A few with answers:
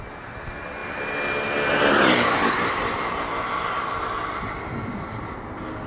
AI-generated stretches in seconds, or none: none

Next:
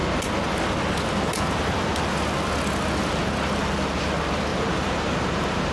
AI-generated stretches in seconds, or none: 4.5-5.7 (vocoder, BigVGAN v2)

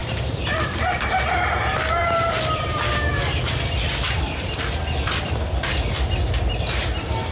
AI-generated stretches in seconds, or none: 0.0-1.0 (vocoder, BigVGAN v2); 2.0-5.3

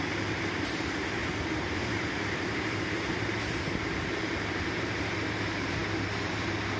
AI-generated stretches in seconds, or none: 0.0-6.8 (vocoder, BigVGAN v2)

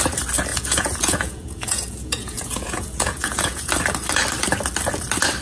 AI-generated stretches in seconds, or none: 0.5-3.7 (vocoder, Vocos)

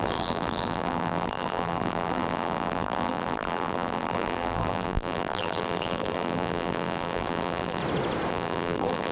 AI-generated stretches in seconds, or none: 0.0-7.8 (vocoder, BigVGAN v2); 8.3-9.1

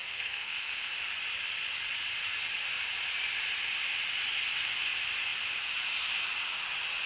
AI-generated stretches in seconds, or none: 0.0-0.9 (codec, SNAC)

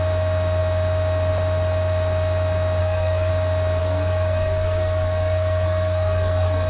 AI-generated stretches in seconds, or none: 2.8-3.3 (codec, SNAC); 3.8-6.7